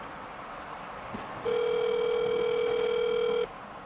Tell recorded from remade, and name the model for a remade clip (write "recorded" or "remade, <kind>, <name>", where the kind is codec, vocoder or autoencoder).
recorded